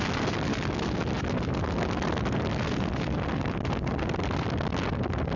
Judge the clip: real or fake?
real